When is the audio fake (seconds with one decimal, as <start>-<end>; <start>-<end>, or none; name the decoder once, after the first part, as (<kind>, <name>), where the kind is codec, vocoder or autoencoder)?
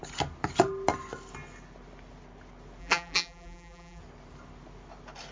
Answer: 2.8-4.0 (vocoder, BigVGAN v2)